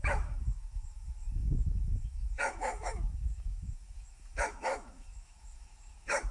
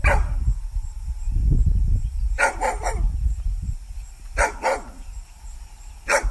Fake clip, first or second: first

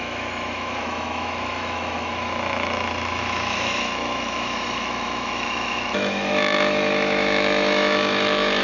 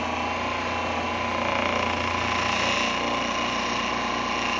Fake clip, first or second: first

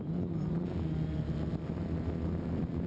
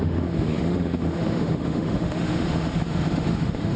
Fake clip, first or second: second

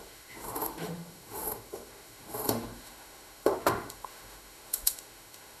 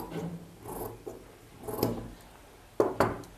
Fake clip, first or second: first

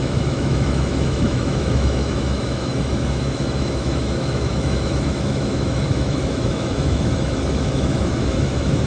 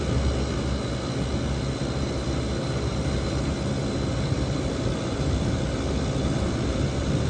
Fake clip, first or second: first